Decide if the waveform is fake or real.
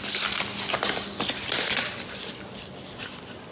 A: real